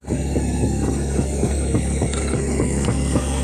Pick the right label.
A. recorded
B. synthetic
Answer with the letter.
B